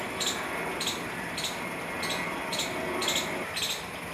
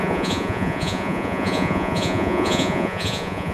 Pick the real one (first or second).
first